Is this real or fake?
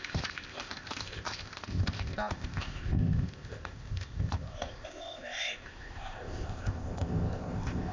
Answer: fake